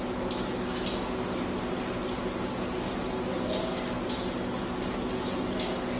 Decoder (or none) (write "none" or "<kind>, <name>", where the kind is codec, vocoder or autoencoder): none